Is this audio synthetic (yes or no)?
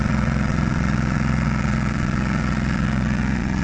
yes